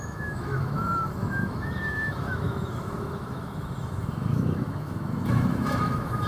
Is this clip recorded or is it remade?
remade